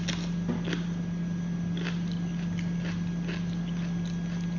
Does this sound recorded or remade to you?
recorded